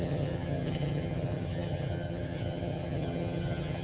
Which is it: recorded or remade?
remade